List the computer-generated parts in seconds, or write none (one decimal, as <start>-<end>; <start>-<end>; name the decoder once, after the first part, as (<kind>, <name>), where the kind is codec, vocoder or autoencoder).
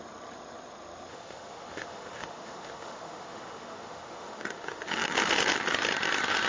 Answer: 1.1-4.9 (autoencoder, DAC-VAE)